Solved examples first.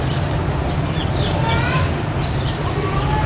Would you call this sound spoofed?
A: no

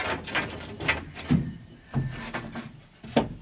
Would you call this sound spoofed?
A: no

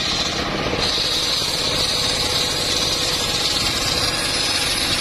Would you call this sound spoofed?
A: no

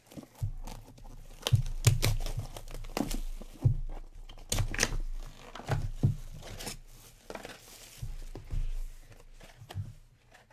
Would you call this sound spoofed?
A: no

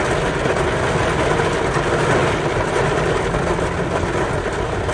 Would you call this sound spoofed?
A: no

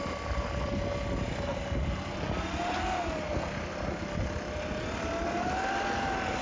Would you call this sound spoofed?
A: no